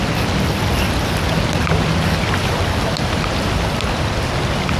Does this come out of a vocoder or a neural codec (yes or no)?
no